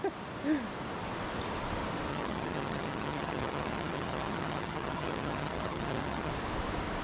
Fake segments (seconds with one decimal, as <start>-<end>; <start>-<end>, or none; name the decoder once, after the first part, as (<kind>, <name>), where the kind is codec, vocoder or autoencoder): 2.1-6.3 (vocoder, HiFi-GAN)